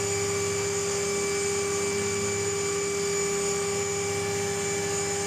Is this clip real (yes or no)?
yes